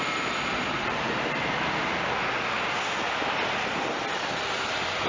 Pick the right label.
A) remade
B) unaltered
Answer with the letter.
B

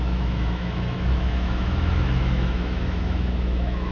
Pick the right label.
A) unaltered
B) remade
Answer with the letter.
B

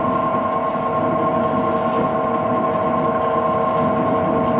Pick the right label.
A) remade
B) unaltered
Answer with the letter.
B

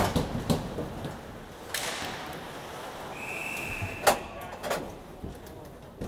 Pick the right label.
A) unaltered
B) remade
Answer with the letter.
A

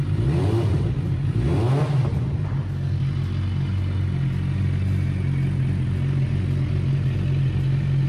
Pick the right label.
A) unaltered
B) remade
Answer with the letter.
A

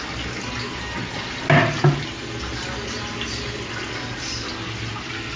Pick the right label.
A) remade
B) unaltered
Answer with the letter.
B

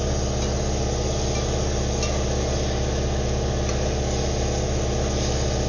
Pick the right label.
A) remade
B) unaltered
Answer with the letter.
B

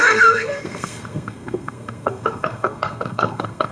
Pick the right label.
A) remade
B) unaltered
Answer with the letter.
A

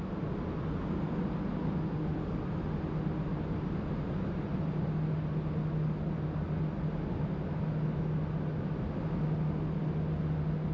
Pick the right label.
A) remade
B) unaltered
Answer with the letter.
B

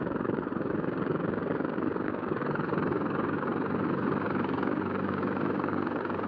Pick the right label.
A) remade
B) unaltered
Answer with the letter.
A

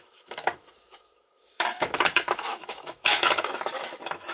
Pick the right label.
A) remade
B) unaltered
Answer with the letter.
A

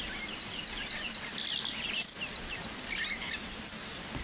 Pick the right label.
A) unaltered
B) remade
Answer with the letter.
A